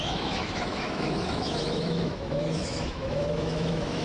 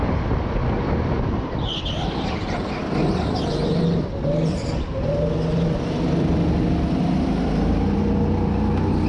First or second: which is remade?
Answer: first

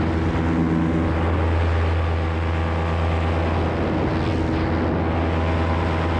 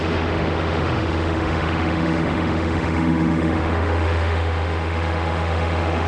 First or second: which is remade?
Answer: second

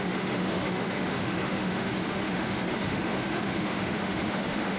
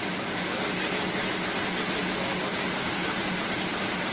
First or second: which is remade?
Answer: first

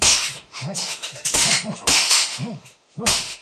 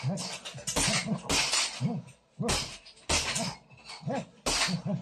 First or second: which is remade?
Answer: first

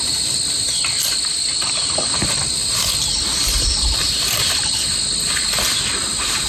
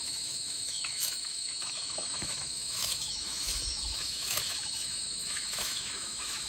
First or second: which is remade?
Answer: second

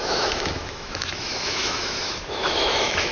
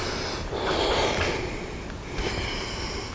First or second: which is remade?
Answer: first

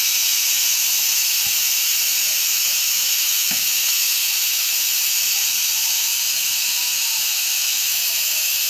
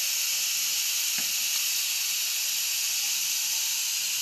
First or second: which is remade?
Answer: first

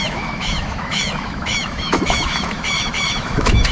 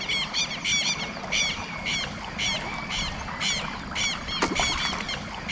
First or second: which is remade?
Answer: first